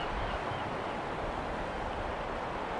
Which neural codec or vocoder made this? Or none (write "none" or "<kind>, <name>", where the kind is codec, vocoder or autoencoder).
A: none